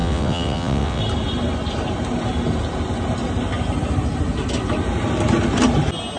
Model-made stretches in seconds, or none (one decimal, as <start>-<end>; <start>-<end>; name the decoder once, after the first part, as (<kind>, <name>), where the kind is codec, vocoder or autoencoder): 0.0-1.0 (vocoder, WaveNeXt)